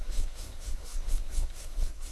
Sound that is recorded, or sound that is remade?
remade